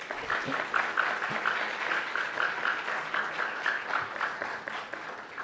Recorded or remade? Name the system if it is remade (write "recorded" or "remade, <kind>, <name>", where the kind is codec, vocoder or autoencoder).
recorded